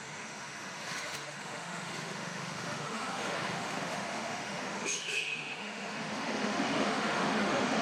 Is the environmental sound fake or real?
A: fake